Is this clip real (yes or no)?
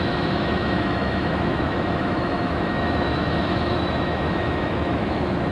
no